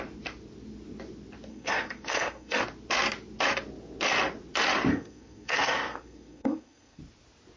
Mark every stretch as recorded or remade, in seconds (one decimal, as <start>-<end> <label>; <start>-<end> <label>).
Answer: 0.0-1.5 recorded; 1.5-2.6 remade; 2.6-4.9 recorded; 4.9-7.0 remade; 7.0-7.6 recorded